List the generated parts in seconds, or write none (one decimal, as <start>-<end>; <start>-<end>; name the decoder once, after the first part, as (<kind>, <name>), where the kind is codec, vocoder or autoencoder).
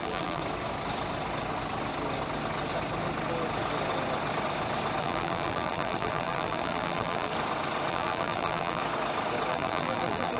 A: 0.0-0.4 (vocoder, BigVGAN v2); 5.0-7.3; 7.9-8.8; 9.5-10.4